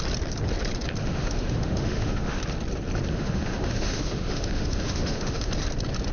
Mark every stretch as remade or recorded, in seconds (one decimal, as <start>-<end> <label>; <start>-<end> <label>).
0.0-1.0 recorded; 1.0-2.4 remade; 2.4-3.1 recorded; 3.1-5.5 remade; 5.5-6.1 recorded